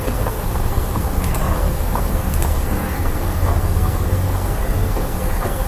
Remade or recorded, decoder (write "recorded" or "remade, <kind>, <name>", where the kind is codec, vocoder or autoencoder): remade, codec, SNAC